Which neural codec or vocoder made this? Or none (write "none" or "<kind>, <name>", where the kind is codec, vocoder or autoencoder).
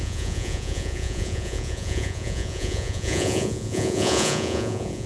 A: vocoder, Vocos